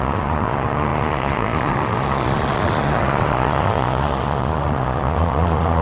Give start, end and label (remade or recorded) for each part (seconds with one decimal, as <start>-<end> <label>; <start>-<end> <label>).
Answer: 0.0-5.8 remade